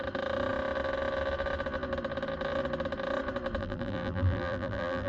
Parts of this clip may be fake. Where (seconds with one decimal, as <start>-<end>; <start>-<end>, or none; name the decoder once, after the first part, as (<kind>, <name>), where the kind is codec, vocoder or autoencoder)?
3.6-5.1 (vocoder, BigVGAN v2)